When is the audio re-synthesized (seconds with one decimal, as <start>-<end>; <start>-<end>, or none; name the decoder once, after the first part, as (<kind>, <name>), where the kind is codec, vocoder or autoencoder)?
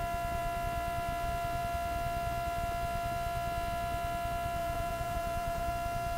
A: 4.6-5.7 (vocoder, Vocos)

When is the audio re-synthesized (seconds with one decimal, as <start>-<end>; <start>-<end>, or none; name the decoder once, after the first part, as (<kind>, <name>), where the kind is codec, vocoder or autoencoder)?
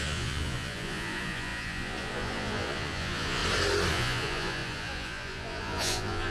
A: 0.0-3.4 (vocoder, Vocos); 3.9-6.3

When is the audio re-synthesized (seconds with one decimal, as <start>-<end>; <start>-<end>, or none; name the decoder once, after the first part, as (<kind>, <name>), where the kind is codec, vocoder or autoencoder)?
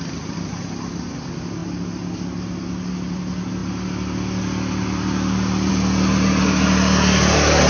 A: none